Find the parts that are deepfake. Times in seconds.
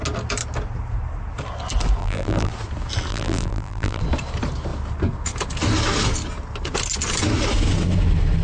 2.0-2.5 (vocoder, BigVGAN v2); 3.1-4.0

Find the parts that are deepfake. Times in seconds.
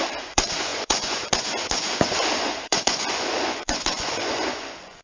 0.0-5.0 (vocoder, Vocos)